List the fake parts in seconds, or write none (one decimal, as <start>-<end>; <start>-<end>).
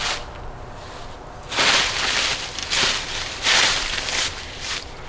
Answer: none